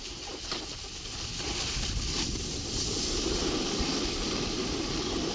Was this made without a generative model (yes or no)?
yes